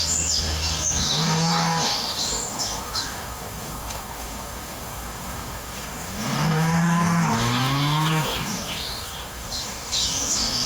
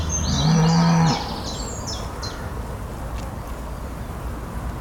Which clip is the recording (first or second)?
second